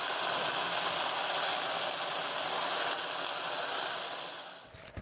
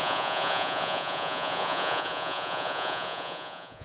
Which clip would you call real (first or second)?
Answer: first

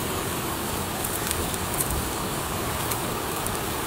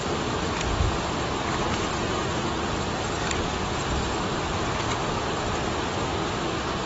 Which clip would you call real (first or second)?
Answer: second